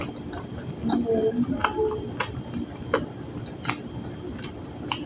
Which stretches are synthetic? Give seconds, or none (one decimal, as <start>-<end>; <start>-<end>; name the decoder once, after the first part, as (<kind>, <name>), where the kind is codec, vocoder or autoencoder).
none